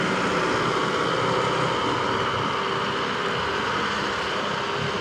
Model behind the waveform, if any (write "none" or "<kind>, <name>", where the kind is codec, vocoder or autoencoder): none